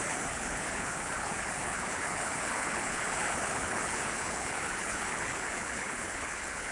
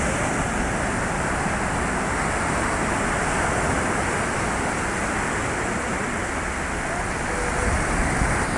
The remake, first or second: first